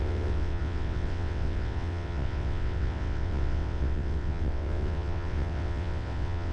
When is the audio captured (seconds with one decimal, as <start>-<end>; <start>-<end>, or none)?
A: none